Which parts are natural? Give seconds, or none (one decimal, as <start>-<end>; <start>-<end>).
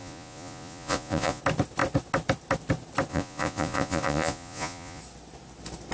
1.4-3.1; 5.0-5.9